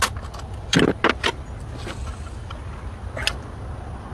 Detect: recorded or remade recorded